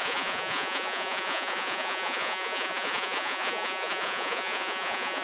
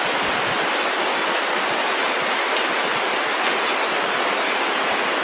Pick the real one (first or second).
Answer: second